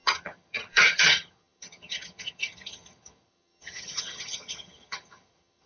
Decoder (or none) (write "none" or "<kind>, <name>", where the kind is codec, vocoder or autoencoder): vocoder, HiFi-GAN